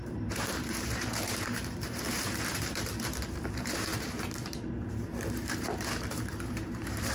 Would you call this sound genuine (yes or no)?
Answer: no